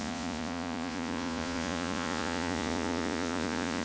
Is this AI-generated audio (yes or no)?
yes